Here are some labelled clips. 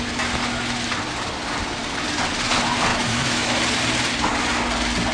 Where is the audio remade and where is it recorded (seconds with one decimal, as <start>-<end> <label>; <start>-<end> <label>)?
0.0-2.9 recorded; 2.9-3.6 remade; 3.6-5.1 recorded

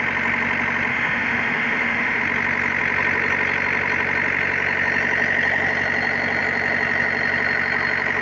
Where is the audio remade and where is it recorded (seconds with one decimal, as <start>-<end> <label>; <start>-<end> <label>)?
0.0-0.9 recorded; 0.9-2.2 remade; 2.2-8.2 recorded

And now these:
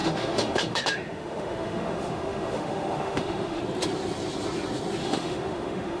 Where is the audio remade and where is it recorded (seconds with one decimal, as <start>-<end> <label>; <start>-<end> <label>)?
0.0-3.6 remade; 3.6-5.0 recorded; 5.0-6.0 remade

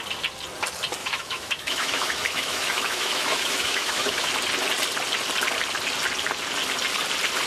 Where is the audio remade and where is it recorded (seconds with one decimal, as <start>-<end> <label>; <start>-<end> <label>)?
0.0-1.0 recorded; 1.0-4.3 remade; 4.3-7.5 recorded

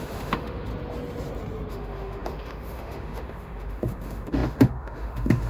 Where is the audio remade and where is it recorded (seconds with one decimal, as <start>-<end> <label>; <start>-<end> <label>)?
0.0-0.7 remade; 0.7-1.7 recorded; 1.7-5.5 remade

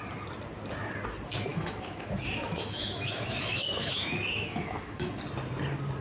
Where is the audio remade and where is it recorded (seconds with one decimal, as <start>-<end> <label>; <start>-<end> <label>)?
0.0-1.5 recorded; 1.5-5.1 remade; 5.1-6.0 recorded

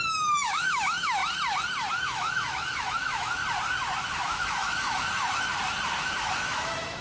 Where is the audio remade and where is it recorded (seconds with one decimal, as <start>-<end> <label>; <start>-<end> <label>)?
0.0-1.2 remade; 1.2-1.9 recorded; 1.9-3.4 remade; 3.4-4.1 recorded; 4.1-5.5 remade; 5.5-6.0 recorded; 6.0-7.0 remade

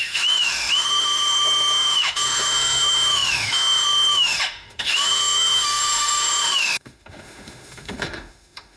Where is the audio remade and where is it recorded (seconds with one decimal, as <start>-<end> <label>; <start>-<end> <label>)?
0.0-8.8 remade